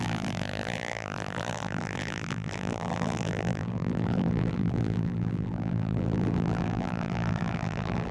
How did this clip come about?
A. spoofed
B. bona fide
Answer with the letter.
A